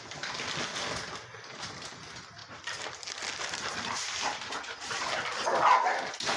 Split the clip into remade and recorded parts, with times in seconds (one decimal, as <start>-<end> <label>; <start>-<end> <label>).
0.0-6.4 recorded